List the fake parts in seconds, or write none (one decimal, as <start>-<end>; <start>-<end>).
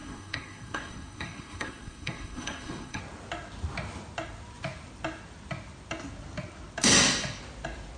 0.0-3.0